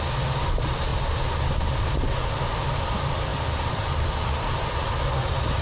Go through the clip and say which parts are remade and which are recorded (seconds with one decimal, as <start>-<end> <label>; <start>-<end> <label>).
0.0-0.9 remade; 0.9-2.4 recorded; 2.4-5.6 remade